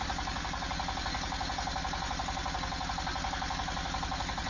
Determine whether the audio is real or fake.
real